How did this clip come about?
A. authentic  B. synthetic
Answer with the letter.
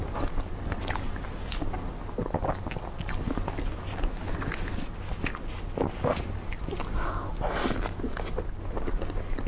A